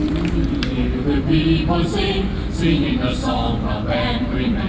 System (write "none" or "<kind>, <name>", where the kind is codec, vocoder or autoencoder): vocoder, BigVGAN v2